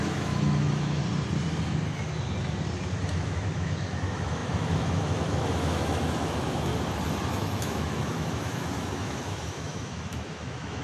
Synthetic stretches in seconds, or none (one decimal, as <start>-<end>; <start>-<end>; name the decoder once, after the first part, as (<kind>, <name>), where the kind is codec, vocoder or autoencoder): 0.0-1.0 (autoencoder, DAC-VAE); 3.1-6.7; 7.3-10.8